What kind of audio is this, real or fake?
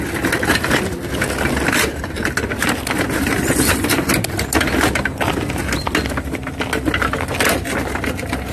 real